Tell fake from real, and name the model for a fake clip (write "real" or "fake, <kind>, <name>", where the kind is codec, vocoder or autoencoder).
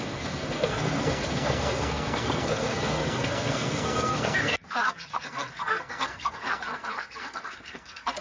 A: fake, codec, SNAC